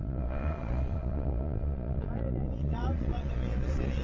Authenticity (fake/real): fake